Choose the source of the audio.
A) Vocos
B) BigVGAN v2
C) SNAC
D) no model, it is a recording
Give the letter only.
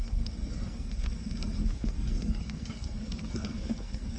C